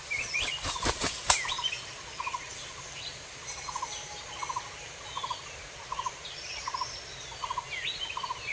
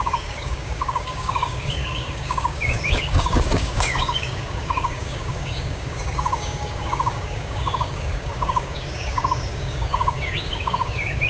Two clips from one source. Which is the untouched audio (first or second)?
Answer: first